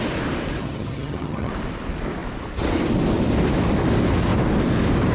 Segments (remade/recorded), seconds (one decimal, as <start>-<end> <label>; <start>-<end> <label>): 0.0-0.6 recorded; 0.6-1.5 remade; 1.5-5.1 recorded